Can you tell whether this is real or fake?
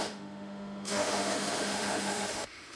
fake